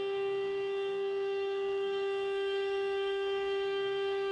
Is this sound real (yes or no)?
no